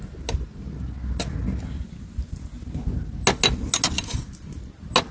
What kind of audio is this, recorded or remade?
recorded